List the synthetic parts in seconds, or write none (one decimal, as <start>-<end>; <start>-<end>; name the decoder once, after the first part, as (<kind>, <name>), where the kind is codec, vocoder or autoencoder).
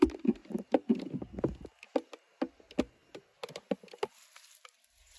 none